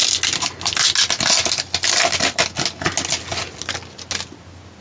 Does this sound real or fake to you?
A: real